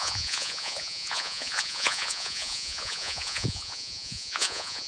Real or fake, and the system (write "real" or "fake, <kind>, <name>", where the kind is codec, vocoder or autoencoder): fake, vocoder, Vocos